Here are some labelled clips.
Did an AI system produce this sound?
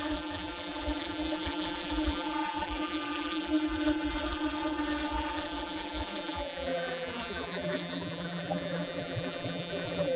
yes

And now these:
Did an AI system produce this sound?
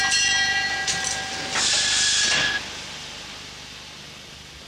no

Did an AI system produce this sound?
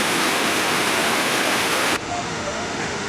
yes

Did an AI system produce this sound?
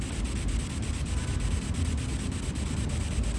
no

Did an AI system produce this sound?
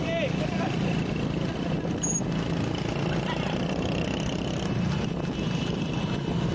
no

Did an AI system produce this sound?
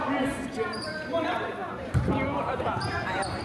yes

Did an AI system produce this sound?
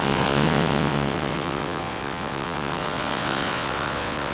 yes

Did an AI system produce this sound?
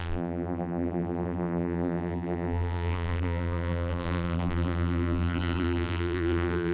yes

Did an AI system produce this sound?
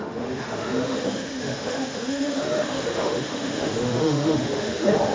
yes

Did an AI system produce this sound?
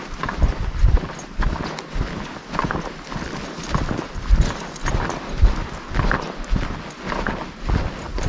no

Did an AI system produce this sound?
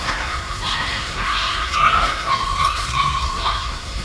yes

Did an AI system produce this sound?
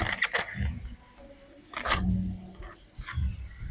no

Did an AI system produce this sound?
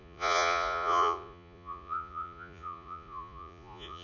yes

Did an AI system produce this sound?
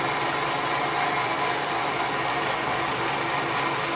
no